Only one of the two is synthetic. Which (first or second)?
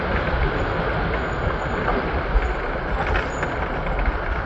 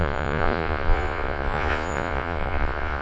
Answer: second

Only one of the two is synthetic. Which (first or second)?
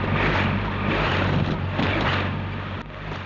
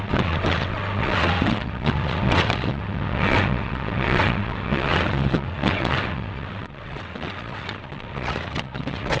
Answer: second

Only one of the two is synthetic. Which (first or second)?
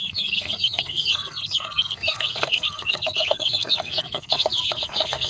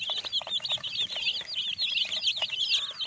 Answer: first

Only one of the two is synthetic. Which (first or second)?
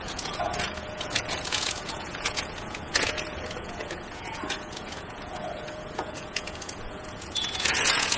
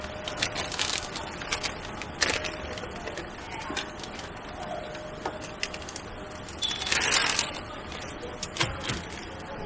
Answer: first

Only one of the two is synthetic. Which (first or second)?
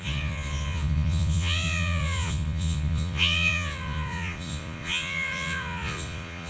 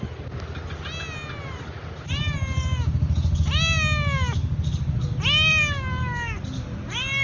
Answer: first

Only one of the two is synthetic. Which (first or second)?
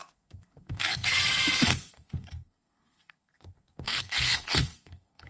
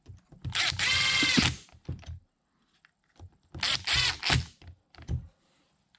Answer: first